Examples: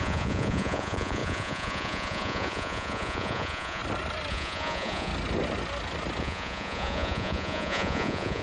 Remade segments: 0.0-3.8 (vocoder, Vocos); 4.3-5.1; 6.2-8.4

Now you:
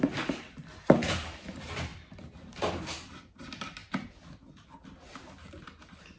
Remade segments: none

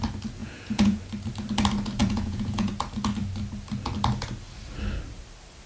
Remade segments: 0.4-1.0 (vocoder, Vocos); 2.0-2.7

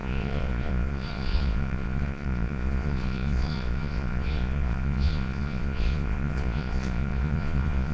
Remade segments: 0.0-7.9 (vocoder, Vocos)

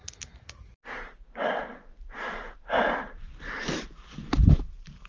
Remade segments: none

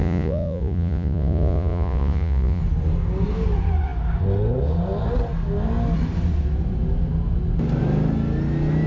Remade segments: 0.0-2.6 (vocoder, Vocos)